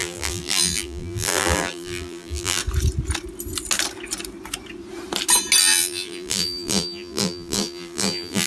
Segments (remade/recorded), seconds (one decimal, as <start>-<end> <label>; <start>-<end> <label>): 0.0-2.6 remade; 2.6-5.6 recorded; 5.6-8.5 remade